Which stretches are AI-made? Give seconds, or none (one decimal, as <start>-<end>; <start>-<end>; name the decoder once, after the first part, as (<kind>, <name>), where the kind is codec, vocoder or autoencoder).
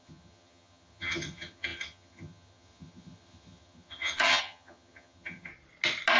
0.0-5.5 (vocoder, HiFi-GAN)